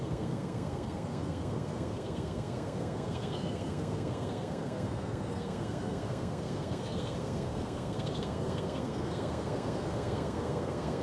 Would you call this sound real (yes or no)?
no